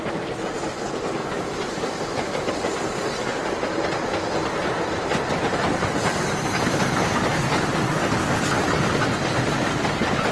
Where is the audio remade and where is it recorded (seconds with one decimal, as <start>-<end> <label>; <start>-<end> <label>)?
0.0-1.2 recorded; 1.2-2.5 remade; 2.5-10.3 recorded